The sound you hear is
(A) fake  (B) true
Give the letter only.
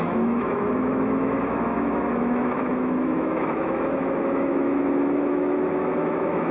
A